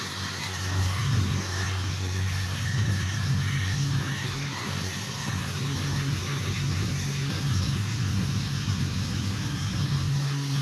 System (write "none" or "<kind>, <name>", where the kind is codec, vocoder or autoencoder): codec, SNAC